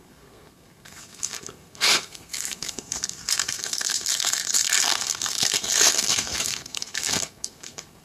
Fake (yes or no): yes